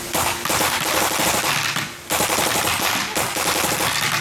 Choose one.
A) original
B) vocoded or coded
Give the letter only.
A